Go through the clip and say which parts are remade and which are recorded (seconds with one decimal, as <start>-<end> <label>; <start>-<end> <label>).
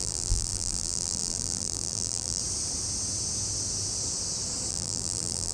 0.0-2.4 remade; 2.4-4.7 recorded; 4.7-5.5 remade